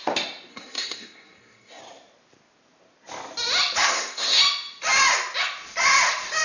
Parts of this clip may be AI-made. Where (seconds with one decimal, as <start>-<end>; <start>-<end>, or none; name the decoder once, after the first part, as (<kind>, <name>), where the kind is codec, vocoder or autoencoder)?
0.5-1.8 (codec, SNAC); 3.8-4.4